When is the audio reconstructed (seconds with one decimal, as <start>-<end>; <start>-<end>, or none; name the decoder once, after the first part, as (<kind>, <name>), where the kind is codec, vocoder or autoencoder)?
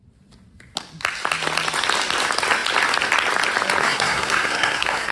3.8-5.1 (codec, SNAC)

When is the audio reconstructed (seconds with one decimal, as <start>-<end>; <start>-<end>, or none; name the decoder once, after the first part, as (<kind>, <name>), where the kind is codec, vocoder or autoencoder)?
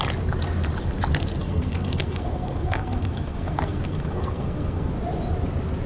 1.4-4.9 (codec, SNAC)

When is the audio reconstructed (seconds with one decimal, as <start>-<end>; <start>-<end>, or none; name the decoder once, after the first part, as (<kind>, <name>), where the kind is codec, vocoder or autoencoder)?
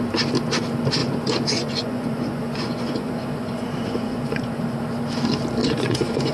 1.0-4.8 (vocoder, Vocos); 5.6-6.3